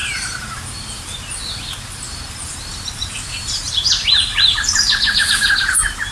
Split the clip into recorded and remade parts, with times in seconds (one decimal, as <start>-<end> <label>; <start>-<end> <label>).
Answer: 0.0-3.7 remade; 3.7-4.3 recorded; 4.3-5.5 remade; 5.5-6.1 recorded